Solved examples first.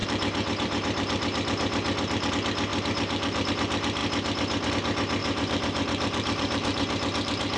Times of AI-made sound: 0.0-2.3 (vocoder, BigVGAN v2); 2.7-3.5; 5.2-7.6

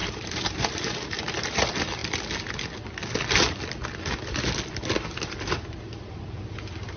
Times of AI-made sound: 0.0-2.0 (vocoder, BigVGAN v2); 5.2-7.0

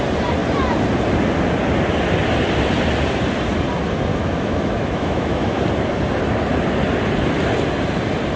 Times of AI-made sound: 4.1-5.6 (autoencoder, DAC-VAE)

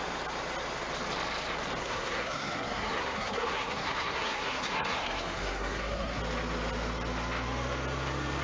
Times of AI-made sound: 1.8-6.2 (codec, SNAC)

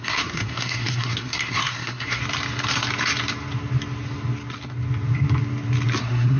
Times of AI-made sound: 0.0-2.2 (codec, SNAC); 6.0-6.4

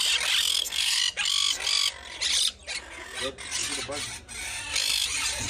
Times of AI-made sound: 0.5-1.0 (codec, SNAC)

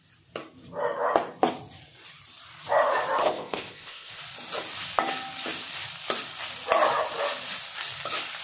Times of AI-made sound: 3.2-4.2 (codec, ZipCodec)

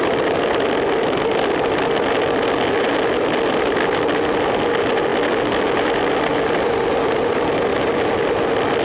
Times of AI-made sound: none